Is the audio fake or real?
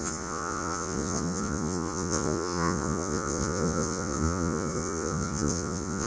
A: fake